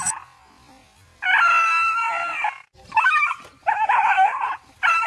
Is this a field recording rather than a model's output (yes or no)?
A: yes